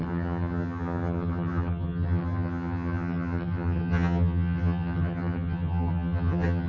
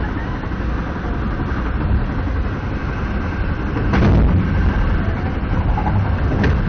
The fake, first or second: first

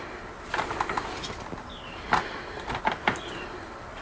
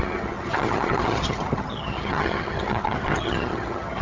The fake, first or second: second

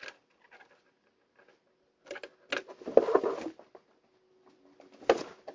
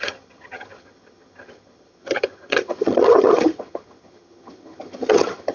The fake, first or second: second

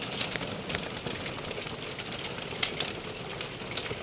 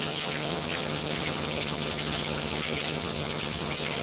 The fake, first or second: second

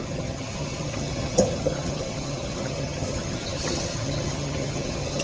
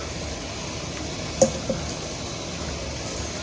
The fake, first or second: first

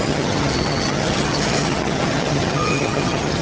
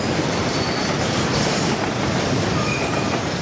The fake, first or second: first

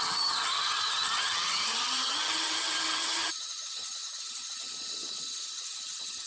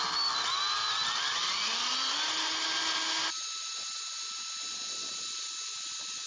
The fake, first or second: first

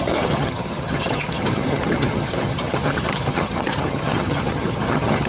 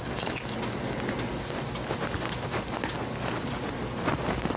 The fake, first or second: first